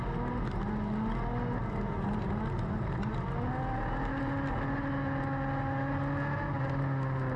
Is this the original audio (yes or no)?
yes